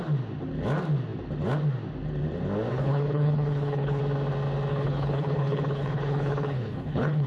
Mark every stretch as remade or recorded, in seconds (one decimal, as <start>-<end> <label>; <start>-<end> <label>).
0.0-2.7 recorded; 2.7-4.0 remade; 4.0-4.7 recorded; 4.7-7.3 remade